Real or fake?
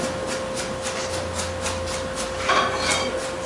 real